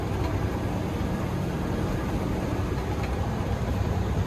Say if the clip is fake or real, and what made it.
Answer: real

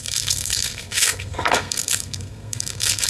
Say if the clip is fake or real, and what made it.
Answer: fake, codec, SNAC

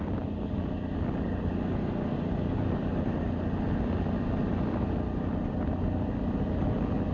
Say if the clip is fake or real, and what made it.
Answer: real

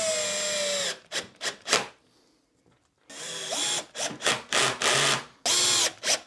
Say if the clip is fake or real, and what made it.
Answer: real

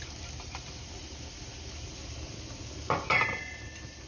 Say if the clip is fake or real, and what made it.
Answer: real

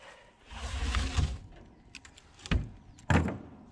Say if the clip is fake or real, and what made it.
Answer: real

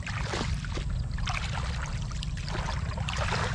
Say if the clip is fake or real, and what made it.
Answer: real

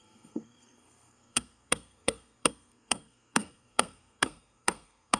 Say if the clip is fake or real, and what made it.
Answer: fake, codec, SNAC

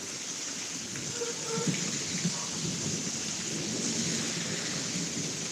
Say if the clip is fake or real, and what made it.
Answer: real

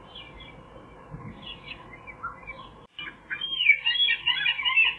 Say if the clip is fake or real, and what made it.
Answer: real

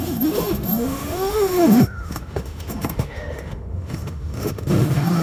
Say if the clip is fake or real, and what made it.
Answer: fake, autoencoder, DAC-VAE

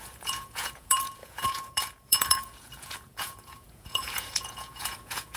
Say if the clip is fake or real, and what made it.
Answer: fake, vocoder, Vocos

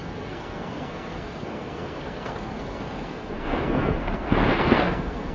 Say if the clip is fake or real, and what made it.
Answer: fake, codec, SNAC